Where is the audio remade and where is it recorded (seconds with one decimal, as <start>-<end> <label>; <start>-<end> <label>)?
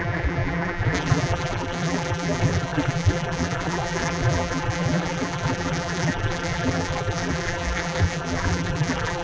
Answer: 0.0-9.2 remade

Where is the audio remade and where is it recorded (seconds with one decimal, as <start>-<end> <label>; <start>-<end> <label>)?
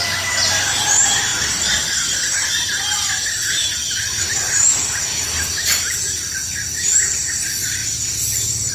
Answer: 0.0-8.7 recorded